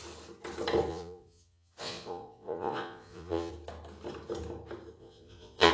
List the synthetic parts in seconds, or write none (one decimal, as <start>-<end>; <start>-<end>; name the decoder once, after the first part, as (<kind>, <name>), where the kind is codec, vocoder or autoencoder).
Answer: 0.9-3.5 (vocoder, Vocos); 5.0-5.7